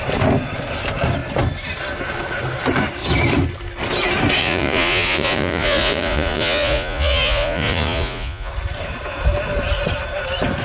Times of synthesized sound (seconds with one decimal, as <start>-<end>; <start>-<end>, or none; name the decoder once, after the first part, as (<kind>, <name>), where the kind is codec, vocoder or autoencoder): 4.4-8.5 (vocoder, Vocos)